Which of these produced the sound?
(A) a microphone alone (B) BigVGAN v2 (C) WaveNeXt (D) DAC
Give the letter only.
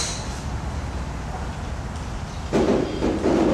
A